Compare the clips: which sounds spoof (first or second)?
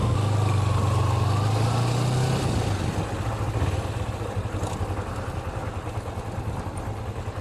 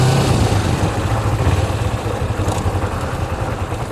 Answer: second